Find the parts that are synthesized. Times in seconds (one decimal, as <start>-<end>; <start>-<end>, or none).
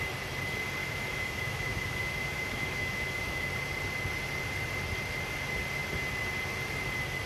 0.8-3.5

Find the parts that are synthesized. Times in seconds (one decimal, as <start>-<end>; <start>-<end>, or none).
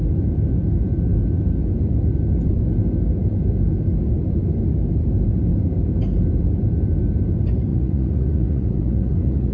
7.7-9.5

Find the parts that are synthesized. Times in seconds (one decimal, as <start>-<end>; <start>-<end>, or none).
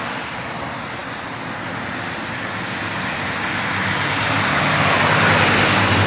none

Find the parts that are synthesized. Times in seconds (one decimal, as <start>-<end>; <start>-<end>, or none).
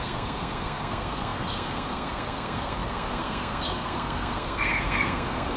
0.0-5.6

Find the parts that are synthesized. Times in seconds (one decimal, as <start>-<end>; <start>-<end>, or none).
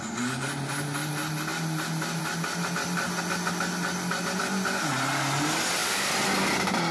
none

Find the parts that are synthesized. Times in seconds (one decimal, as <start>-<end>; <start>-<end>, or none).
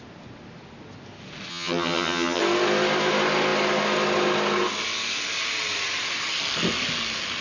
1.5-2.4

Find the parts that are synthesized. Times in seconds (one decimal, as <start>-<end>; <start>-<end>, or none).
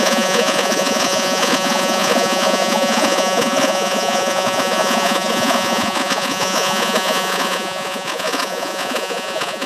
0.0-9.7